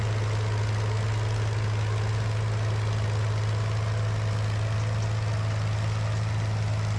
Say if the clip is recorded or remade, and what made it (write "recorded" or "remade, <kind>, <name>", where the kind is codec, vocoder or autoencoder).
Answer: recorded